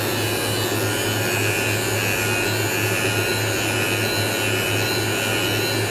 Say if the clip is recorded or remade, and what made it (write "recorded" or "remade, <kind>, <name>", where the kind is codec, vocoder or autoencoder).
recorded